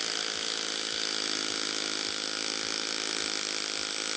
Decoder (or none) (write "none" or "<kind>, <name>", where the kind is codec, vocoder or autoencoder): none